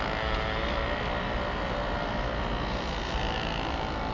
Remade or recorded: recorded